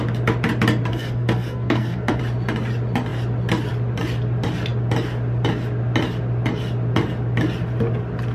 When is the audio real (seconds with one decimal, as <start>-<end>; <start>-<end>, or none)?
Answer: 0.0-0.9; 2.2-8.3